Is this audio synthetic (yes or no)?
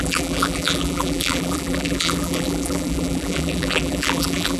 yes